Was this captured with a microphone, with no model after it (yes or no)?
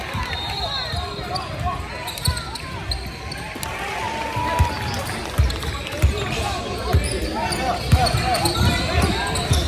yes